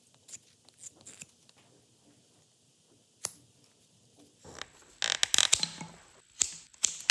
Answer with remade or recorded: recorded